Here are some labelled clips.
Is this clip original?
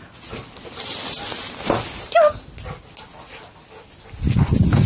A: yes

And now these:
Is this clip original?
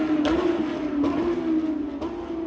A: yes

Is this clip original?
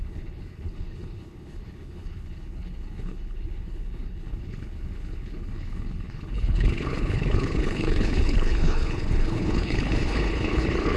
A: no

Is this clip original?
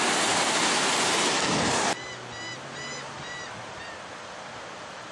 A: yes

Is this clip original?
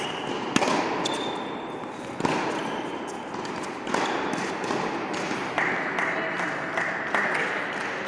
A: yes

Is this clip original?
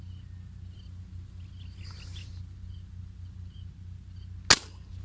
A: yes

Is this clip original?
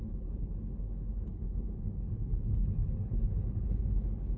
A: no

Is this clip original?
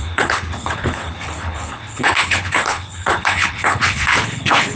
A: no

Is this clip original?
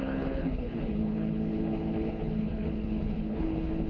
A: no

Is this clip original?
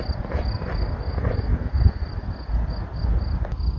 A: yes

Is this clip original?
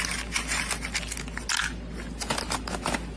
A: yes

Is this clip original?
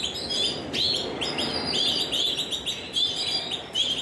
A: yes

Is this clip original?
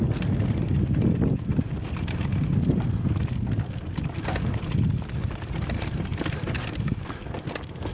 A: yes